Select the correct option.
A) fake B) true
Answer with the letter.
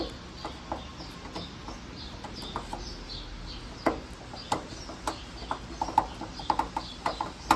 B